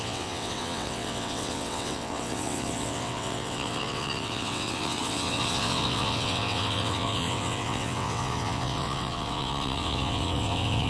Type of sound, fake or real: fake